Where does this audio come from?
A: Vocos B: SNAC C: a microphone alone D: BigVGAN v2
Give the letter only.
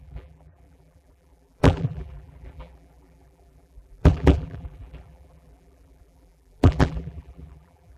D